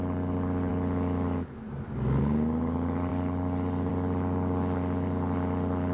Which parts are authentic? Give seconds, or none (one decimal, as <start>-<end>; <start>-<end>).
0.0-5.9